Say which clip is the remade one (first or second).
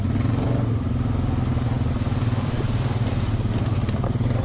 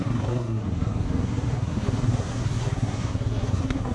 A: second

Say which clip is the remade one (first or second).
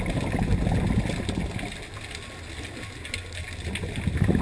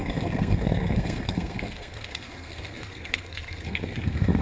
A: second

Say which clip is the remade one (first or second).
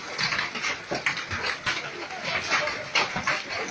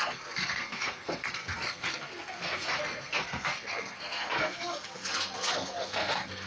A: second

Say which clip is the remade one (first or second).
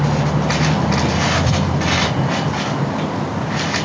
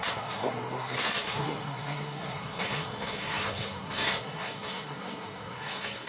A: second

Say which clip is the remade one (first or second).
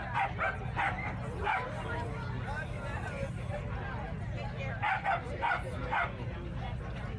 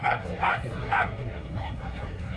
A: second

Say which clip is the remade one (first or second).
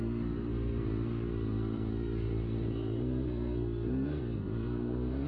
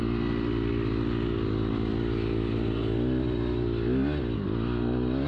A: first